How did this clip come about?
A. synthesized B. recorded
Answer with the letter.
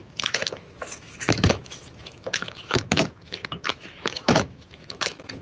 A